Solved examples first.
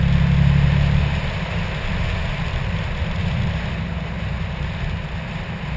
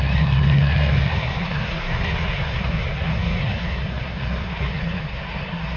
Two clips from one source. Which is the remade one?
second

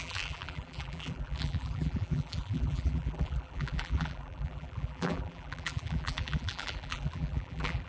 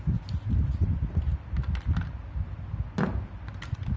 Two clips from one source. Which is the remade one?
first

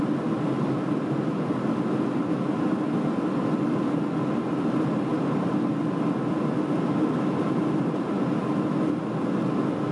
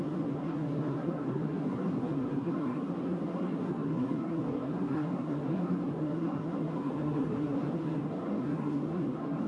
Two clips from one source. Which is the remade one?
second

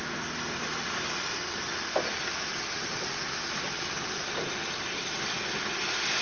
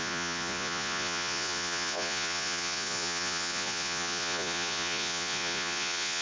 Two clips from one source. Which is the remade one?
second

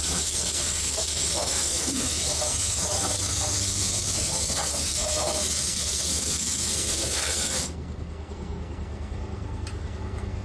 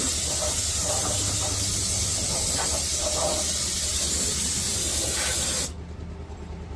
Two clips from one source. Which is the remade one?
first